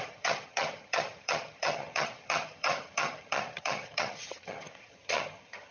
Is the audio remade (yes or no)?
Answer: yes